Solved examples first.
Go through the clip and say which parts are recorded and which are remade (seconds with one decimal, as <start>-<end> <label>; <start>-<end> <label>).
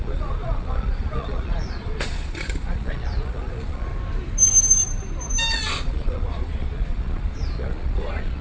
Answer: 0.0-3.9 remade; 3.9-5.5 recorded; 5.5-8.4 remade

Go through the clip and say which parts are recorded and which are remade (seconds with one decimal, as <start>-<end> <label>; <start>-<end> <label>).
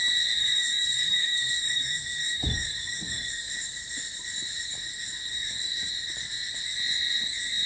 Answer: 0.0-0.4 recorded; 0.4-3.5 remade; 3.5-5.3 recorded; 5.3-5.9 remade; 5.9-7.7 recorded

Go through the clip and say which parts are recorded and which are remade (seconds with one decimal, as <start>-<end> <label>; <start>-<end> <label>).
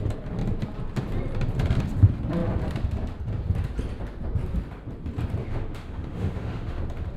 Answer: 0.0-5.4 recorded; 5.4-6.8 remade; 6.8-7.2 recorded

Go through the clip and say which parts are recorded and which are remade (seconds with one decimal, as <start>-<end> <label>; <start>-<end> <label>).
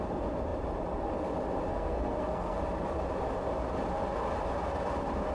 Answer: 0.0-1.7 recorded; 1.7-2.6 remade; 2.6-5.3 recorded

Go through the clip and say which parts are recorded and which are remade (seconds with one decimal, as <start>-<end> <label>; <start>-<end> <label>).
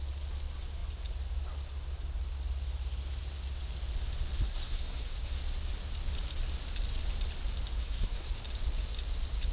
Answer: 0.0-4.4 recorded; 4.4-5.4 remade; 5.4-7.8 recorded; 7.8-8.3 remade; 8.3-9.5 recorded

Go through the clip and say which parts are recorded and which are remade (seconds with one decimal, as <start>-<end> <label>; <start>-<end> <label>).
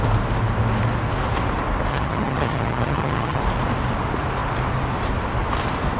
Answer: 0.0-1.9 recorded; 1.9-3.4 remade; 3.4-6.0 recorded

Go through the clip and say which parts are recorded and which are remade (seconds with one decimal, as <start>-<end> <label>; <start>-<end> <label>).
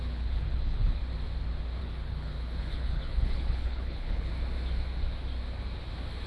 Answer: 0.0-1.0 remade; 1.0-1.8 recorded; 1.8-4.3 remade; 4.3-6.3 recorded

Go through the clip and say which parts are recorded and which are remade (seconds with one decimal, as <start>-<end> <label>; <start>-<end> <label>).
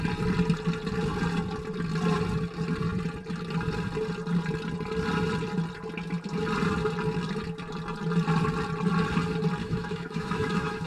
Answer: 0.0-9.6 recorded; 9.6-10.9 remade